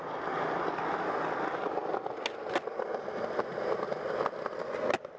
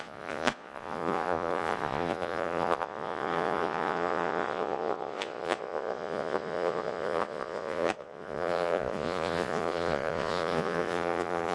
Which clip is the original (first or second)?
first